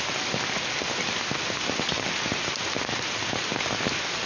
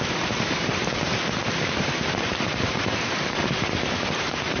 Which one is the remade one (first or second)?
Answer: second